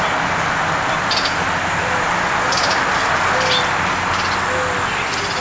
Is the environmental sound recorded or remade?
recorded